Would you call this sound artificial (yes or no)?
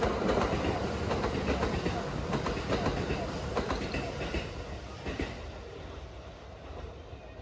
no